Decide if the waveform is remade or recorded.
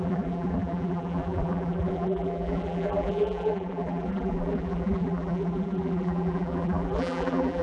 remade